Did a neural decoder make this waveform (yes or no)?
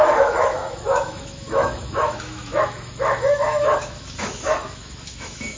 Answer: yes